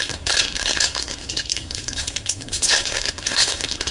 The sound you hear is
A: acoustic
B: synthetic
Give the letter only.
B